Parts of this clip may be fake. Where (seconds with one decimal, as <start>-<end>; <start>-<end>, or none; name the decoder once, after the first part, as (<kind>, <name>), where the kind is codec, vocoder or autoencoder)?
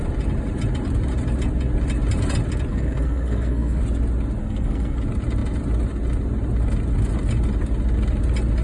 2.7-3.8 (codec, SNAC); 4.4-5.0